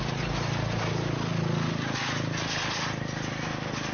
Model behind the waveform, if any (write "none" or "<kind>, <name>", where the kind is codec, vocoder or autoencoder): none